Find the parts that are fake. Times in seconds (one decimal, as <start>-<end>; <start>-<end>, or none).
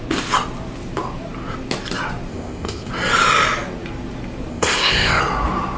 2.3-2.9; 4.5-5.2